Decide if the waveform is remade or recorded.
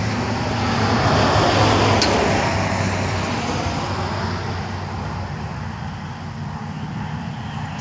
recorded